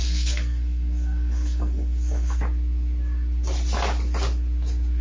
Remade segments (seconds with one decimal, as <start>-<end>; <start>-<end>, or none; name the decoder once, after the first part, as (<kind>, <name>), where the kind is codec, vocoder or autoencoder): 0.0-2.4 (codec, SNAC)